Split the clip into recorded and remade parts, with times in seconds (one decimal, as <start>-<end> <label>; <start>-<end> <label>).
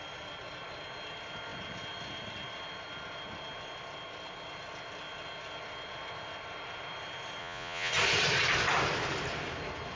0.0-7.4 recorded; 7.4-7.9 remade; 7.9-10.0 recorded